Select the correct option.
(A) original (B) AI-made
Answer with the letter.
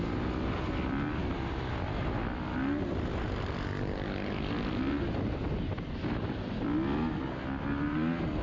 A